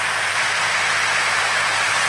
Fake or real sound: real